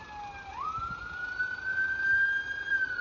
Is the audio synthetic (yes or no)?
no